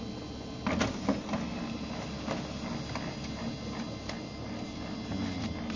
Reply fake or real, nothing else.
real